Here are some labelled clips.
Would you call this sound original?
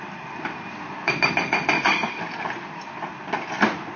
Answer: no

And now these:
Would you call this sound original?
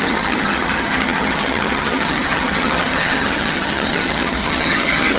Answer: no